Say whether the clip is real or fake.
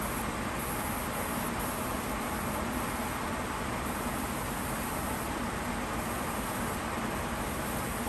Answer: real